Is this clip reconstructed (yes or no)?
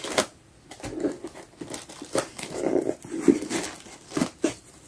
no